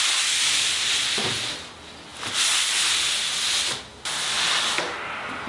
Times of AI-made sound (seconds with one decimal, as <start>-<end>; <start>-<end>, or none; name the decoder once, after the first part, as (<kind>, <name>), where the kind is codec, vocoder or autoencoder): none